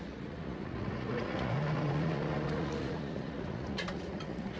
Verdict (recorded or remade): remade